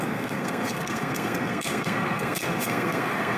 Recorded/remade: remade